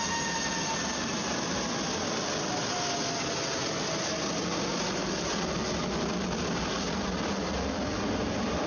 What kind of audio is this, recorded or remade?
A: recorded